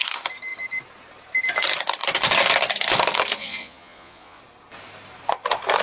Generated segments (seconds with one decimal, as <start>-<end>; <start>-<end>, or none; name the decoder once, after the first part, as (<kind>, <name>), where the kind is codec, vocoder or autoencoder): 3.4-4.4 (vocoder, Vocos)